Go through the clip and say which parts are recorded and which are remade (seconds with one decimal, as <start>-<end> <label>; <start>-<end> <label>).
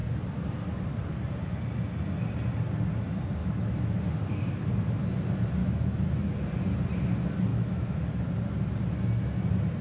0.0-3.4 recorded; 3.4-4.0 remade; 4.0-5.6 recorded; 5.6-6.3 remade; 6.3-7.5 recorded; 7.5-8.0 remade; 8.0-9.8 recorded